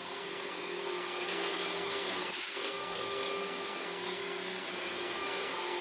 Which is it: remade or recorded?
remade